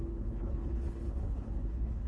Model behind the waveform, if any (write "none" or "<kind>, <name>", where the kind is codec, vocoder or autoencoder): codec, HILCodec